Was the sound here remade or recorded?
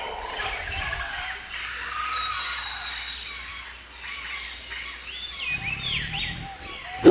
remade